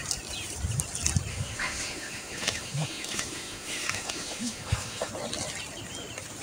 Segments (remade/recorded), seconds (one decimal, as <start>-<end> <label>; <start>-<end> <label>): 0.0-1.3 recorded; 1.3-5.1 remade; 5.1-6.4 recorded